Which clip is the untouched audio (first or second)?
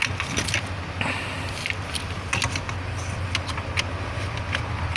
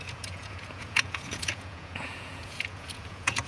first